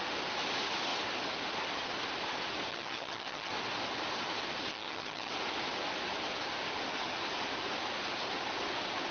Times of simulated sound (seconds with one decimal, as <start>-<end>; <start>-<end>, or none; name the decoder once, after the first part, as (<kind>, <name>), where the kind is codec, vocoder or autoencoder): 2.7-3.5 (vocoder, HiFi-GAN); 4.7-5.3